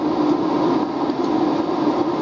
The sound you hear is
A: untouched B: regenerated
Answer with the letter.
A